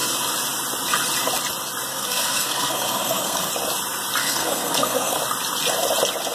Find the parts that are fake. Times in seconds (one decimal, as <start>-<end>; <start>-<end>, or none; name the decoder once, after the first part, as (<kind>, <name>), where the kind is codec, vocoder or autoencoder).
1.9-3.5 (codec, SNAC); 4.2-5.2